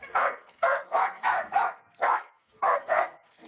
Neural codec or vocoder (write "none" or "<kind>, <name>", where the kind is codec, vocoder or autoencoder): codec, SNAC